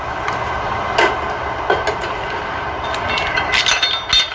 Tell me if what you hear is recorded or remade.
recorded